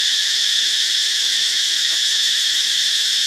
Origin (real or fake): fake